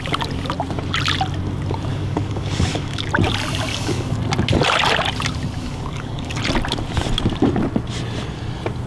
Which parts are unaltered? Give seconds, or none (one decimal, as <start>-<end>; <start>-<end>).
0.0-1.9; 3.1-3.7; 4.2-5.6; 6.4-8.9